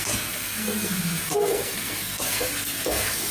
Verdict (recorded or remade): remade